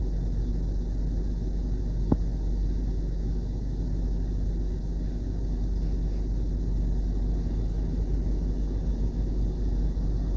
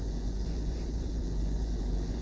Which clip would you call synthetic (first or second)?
second